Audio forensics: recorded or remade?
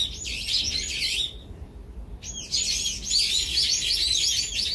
recorded